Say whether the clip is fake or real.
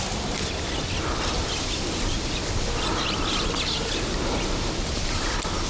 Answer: real